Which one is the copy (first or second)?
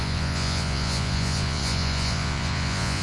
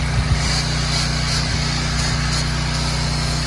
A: first